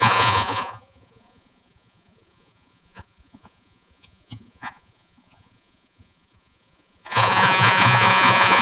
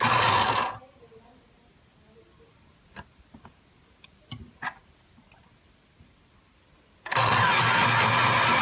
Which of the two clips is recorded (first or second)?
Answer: second